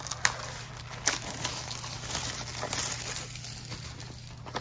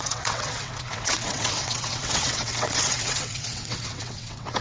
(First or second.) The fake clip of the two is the second